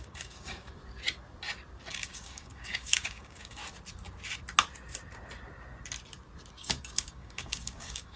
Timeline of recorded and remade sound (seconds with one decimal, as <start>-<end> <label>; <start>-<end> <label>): 0.0-0.8 remade; 0.8-1.9 recorded; 1.9-3.6 remade; 3.6-6.5 recorded; 6.5-8.2 remade